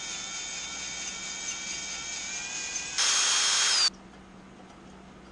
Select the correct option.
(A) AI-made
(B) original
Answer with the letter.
B